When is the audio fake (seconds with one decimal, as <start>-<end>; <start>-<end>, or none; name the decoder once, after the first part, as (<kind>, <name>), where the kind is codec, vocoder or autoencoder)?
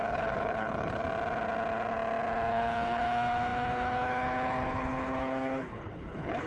0.0-1.0 (codec, HILCodec); 2.5-6.5